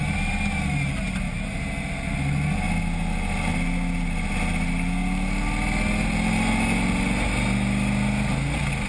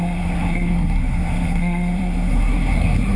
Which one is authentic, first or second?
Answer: first